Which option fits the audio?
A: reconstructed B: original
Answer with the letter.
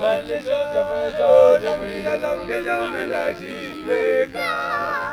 A